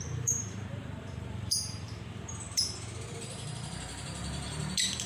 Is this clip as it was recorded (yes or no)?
no